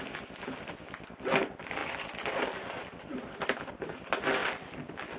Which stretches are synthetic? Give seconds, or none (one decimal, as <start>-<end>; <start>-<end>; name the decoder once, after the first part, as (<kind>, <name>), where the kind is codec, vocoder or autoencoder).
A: 1.8-3.3 (vocoder, BigVGAN v2)